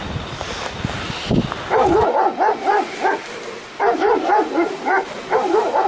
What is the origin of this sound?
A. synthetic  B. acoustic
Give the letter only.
B